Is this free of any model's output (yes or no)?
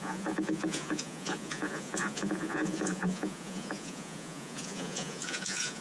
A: no